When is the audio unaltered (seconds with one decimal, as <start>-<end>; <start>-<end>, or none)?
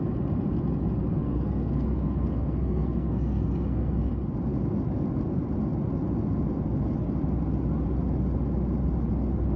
0.0-1.1; 4.1-9.6